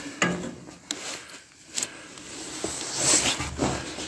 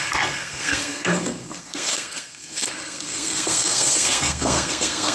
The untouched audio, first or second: first